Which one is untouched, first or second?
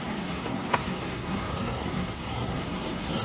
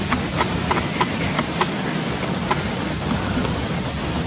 second